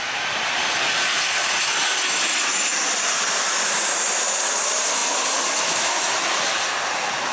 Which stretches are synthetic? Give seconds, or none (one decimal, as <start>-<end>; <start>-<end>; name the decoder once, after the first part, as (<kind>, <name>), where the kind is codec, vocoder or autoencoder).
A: none